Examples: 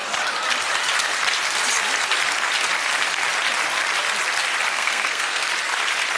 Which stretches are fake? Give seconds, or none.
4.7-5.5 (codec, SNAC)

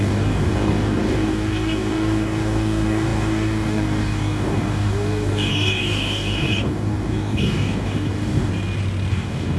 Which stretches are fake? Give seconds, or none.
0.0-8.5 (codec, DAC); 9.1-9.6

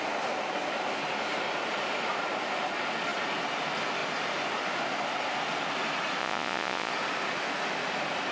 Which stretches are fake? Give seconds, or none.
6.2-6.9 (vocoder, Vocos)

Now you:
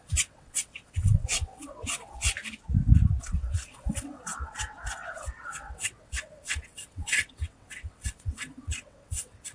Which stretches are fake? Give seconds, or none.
0.0-2.3 (vocoder, WaveNeXt); 3.2-9.5

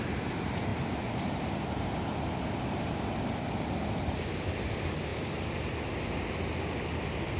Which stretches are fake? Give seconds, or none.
none

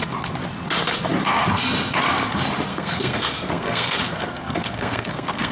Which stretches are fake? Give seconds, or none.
2.7-5.5 (codec, SNAC)

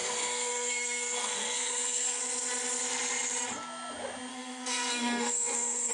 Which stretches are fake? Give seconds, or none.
0.0-2.2 (codec, SNAC); 4.3-5.9

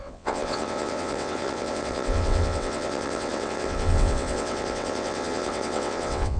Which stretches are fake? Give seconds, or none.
0.0-6.4 (vocoder, WaveNeXt)